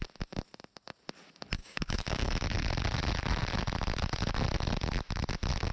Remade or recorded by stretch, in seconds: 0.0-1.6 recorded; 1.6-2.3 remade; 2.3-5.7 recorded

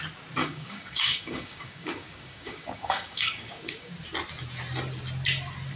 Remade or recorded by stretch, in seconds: 0.0-0.4 recorded; 0.4-3.9 remade; 3.9-5.8 recorded

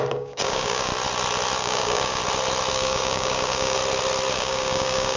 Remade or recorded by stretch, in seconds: 0.0-0.9 remade; 0.9-1.6 recorded; 1.6-2.2 remade; 2.2-2.7 recorded; 2.7-3.8 remade; 3.8-4.3 recorded; 4.3-5.2 remade

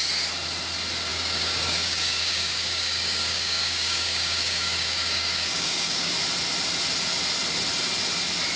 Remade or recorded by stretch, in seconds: 0.0-1.1 recorded; 1.1-6.1 remade; 6.1-8.6 recorded

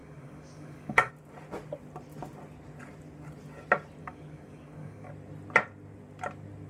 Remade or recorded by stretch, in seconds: 0.0-1.1 remade; 1.1-4.0 recorded; 4.0-5.1 remade; 5.1-6.7 recorded

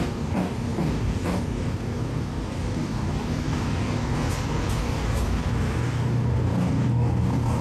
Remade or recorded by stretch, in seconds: 0.0-7.6 remade

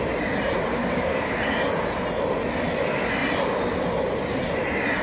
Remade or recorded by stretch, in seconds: 0.0-0.7 recorded; 0.7-1.6 remade; 1.6-5.0 recorded

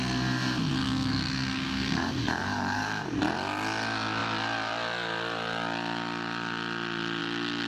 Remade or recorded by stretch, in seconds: 0.0-0.8 recorded; 0.8-3.2 remade; 3.2-7.7 recorded